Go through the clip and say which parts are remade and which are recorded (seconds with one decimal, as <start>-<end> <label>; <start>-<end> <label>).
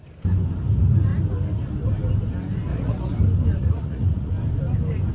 0.0-2.7 recorded; 2.7-3.2 remade; 3.2-3.6 recorded; 3.6-4.3 remade; 4.3-5.1 recorded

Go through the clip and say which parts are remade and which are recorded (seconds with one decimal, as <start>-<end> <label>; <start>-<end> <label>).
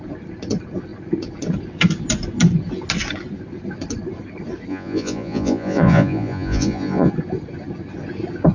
0.0-4.7 recorded; 4.7-7.1 remade; 7.1-8.5 recorded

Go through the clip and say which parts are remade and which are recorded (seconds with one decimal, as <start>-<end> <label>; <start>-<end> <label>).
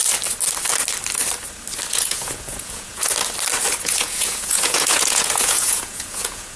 0.0-1.9 recorded; 1.9-3.1 remade; 3.1-3.7 recorded; 3.7-6.6 remade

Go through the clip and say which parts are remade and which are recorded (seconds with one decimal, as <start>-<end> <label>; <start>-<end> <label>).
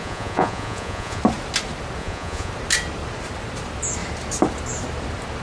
0.0-1.2 remade; 1.2-2.0 recorded; 2.0-2.5 remade; 2.5-5.4 recorded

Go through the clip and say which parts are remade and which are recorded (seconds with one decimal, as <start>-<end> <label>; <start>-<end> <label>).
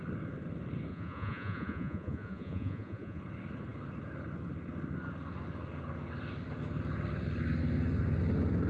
0.0-0.9 recorded; 0.9-3.2 remade; 3.2-8.7 recorded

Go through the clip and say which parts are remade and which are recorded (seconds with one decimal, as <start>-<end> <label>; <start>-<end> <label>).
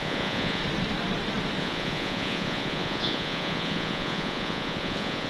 0.0-0.6 remade; 0.6-1.6 recorded; 1.6-5.3 remade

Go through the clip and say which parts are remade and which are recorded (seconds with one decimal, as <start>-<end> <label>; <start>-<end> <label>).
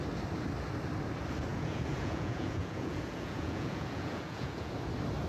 0.0-1.5 recorded; 1.5-4.7 remade; 4.7-5.3 recorded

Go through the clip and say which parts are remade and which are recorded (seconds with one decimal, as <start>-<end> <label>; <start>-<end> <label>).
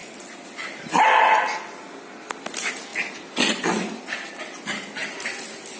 0.0-5.8 recorded